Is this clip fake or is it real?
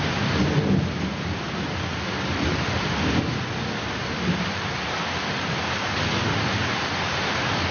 real